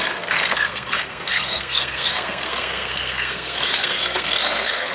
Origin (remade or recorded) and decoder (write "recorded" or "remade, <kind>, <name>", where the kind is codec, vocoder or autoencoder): remade, codec, SNAC